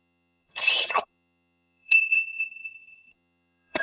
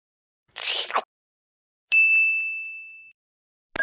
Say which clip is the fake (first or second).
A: first